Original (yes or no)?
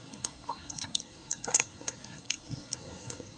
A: no